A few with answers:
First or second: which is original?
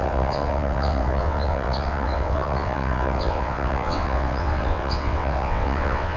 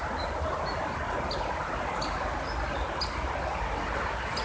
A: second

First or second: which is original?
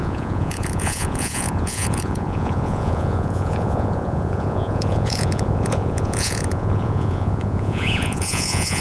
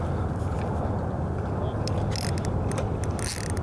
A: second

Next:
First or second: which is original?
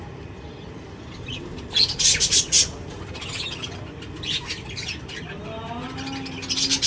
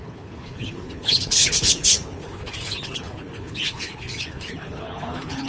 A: first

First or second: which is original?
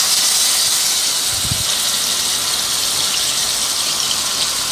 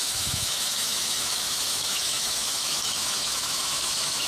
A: first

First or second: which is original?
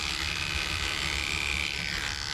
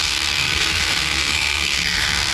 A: first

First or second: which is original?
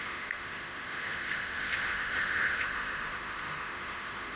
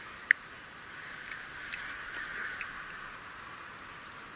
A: second